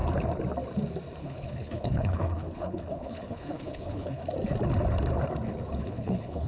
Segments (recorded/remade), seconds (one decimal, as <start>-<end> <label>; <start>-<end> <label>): 0.0-1.2 recorded; 1.2-4.2 remade; 4.2-5.8 recorded; 5.8-6.5 remade

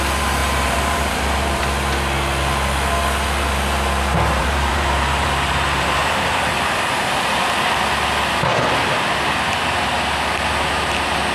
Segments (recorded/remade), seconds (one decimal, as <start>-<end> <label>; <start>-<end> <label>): 0.0-0.4 recorded; 0.4-1.6 remade; 1.6-4.4 recorded; 4.4-7.3 remade; 7.3-11.3 recorded

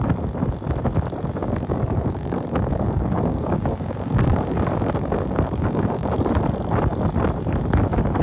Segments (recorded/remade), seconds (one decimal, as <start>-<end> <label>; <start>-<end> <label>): 0.0-1.4 recorded; 1.4-6.3 remade; 6.3-8.2 recorded

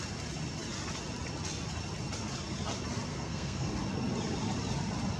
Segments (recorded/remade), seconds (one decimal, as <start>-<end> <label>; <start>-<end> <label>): 0.0-3.1 recorded; 3.1-3.7 remade; 3.7-5.2 recorded

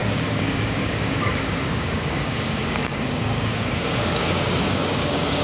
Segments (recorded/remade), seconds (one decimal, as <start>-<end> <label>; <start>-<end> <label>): 0.0-5.4 remade

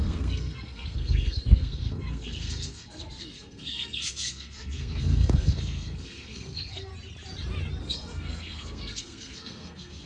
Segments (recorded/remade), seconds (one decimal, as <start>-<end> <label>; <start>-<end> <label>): 0.0-6.9 remade; 6.9-7.8 recorded; 7.8-10.1 remade